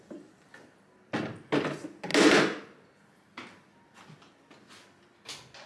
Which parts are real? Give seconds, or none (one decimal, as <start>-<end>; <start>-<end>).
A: 0.0-5.7